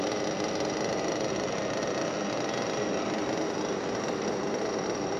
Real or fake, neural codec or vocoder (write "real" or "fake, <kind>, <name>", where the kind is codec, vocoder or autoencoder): real